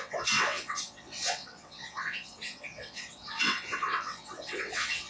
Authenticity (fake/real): fake